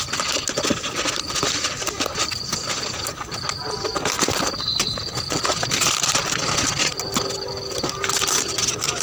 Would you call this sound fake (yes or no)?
no